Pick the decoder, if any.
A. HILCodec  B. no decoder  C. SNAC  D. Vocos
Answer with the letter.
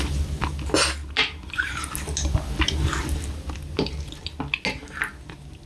B